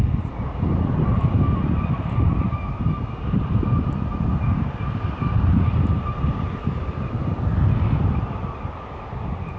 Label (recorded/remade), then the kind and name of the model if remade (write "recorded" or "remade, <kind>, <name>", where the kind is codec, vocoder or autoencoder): recorded